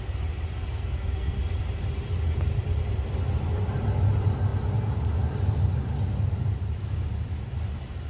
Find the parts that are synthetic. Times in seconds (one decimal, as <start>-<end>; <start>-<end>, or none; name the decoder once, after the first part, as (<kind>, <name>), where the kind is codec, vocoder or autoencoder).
0.7-1.4 (codec, SNAC)